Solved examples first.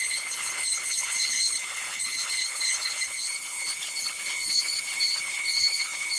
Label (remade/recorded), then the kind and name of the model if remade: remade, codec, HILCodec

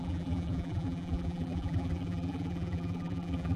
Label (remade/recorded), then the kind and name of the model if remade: remade, vocoder, BigVGAN v2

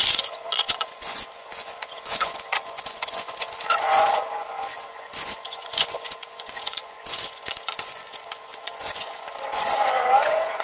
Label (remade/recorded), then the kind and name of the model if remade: remade, vocoder, Vocos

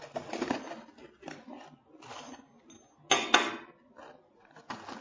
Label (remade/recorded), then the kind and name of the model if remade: recorded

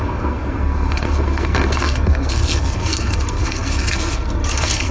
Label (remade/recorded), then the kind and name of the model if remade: remade, codec, SNAC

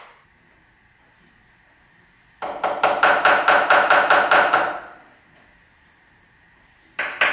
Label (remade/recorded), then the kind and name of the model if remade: recorded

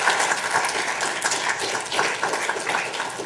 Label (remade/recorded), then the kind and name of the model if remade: recorded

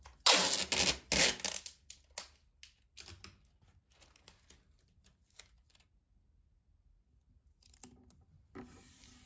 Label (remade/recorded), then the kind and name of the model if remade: recorded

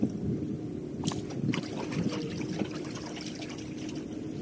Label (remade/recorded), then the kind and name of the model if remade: recorded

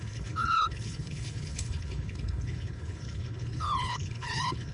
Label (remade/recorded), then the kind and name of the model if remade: remade, codec, HILCodec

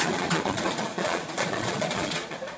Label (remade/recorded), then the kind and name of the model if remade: remade, vocoder, Vocos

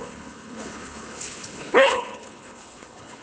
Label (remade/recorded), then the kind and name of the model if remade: remade, codec, HILCodec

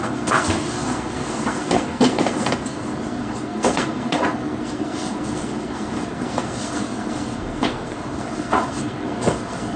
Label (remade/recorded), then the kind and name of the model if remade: remade, codec, SNAC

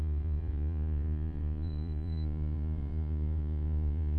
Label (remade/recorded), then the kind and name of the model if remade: remade, vocoder, Vocos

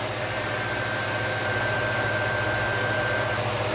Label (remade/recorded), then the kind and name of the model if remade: recorded